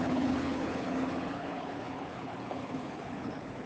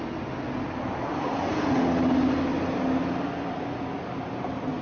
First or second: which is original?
second